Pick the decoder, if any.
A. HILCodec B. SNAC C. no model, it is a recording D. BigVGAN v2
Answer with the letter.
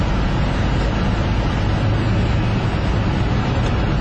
C